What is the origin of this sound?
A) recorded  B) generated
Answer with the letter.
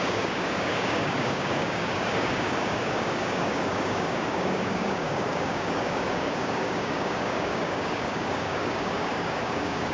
B